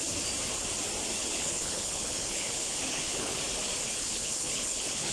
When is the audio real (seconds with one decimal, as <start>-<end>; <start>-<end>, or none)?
0.0-1.2; 3.4-3.9